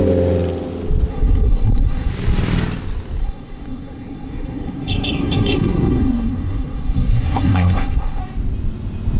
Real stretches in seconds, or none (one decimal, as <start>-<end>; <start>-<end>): 0.0-1.1; 2.1-3.2; 8.2-9.2